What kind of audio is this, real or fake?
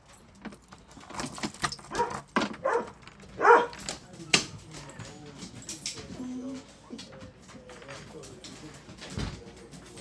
real